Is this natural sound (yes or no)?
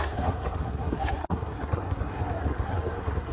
no